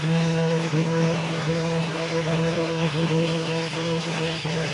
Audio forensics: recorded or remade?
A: remade